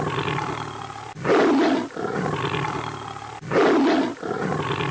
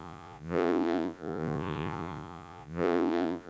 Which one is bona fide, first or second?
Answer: first